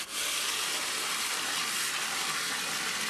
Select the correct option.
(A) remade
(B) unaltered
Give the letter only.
B